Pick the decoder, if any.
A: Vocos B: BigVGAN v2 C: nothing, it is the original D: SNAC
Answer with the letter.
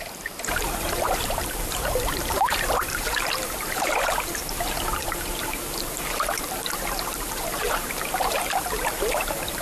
B